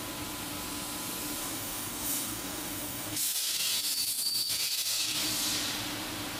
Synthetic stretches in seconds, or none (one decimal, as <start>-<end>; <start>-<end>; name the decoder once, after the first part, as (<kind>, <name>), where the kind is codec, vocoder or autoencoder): 1.4-5.2 (codec, DAC)